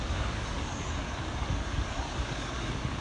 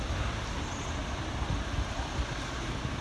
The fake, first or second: first